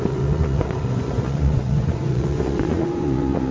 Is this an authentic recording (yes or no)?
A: no